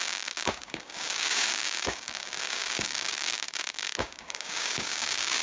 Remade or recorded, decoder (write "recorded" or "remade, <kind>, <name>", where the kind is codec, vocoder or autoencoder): remade, codec, DAC